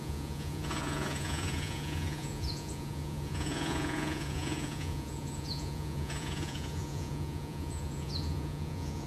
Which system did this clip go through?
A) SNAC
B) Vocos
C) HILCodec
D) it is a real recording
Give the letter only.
B